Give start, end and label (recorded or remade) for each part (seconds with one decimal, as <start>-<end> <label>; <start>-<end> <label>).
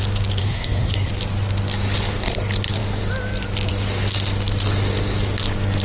0.0-0.4 recorded; 0.4-1.1 remade; 1.1-5.8 recorded